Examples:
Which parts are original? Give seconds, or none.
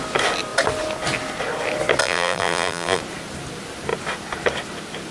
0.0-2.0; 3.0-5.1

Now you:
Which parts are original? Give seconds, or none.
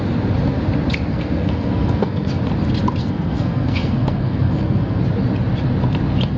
0.0-1.1; 2.4-3.0; 5.0-6.4